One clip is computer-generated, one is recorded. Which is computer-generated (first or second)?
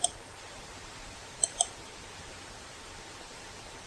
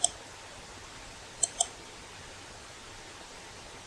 first